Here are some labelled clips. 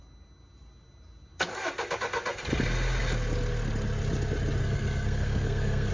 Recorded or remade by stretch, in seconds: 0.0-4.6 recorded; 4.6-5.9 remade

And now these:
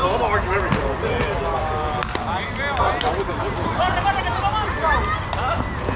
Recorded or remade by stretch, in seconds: 0.0-6.0 recorded

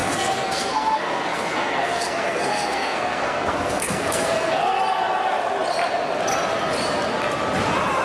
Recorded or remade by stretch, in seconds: 0.0-4.8 remade; 4.8-8.0 recorded

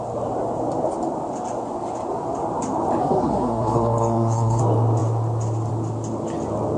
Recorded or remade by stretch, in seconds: 0.0-3.0 recorded; 3.0-4.6 remade; 4.6-6.8 recorded

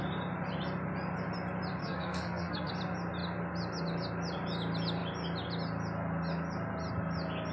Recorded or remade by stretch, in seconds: 0.0-1.8 recorded; 1.8-2.7 remade; 2.7-7.5 recorded